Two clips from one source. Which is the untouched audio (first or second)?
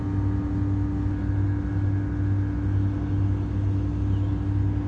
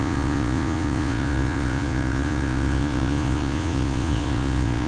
first